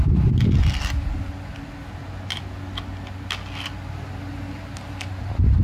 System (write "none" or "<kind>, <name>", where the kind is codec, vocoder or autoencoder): none